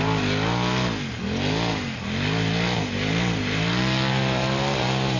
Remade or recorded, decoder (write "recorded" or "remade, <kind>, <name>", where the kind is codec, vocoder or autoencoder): recorded